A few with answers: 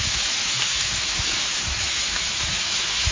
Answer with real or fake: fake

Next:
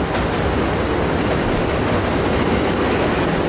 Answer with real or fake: real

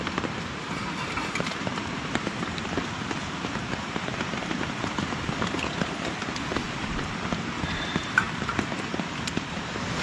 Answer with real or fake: fake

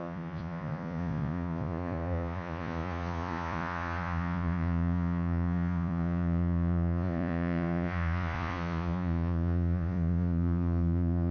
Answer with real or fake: fake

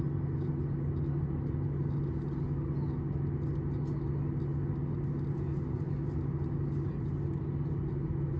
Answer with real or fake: real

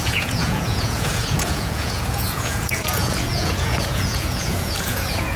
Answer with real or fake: fake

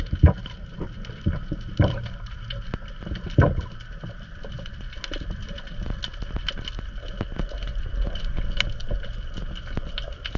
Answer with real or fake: real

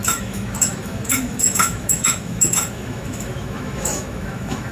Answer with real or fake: fake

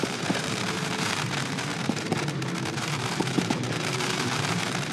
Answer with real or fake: fake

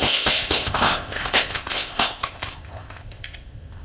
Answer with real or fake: fake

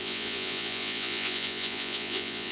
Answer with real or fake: fake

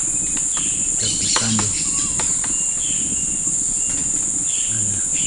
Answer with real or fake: real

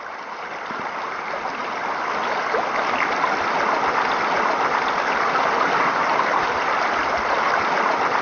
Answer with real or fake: real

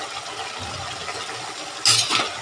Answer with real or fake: real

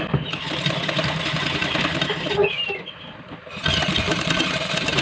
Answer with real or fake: real